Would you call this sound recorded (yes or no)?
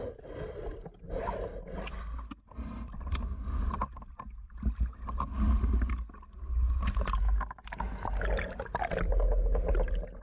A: yes